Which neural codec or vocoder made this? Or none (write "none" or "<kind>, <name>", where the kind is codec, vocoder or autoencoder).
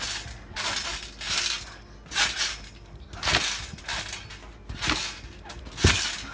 none